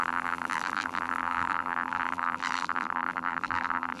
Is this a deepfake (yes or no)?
yes